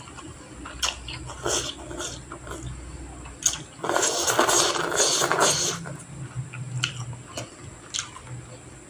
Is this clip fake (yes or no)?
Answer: no